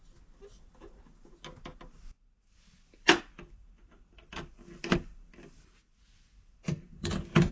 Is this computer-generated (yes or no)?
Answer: no